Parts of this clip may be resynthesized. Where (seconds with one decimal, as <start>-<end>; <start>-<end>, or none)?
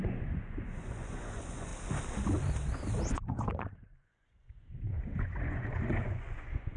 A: 0.0-1.7; 3.1-6.8